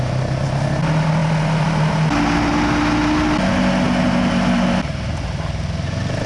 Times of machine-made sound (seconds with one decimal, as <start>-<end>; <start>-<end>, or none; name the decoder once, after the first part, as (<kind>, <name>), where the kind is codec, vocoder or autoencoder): none